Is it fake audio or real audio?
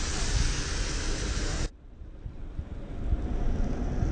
real